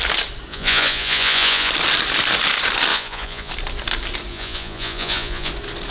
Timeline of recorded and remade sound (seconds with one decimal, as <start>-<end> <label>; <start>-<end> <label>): 0.0-0.5 recorded; 0.5-1.7 remade; 1.7-2.9 recorded; 2.9-3.5 remade; 3.5-4.3 recorded; 4.3-5.5 remade; 5.5-5.9 recorded